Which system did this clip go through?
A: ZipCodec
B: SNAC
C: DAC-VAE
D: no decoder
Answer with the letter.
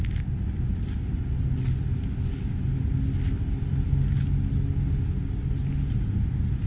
D